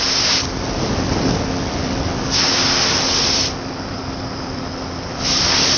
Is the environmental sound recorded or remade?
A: recorded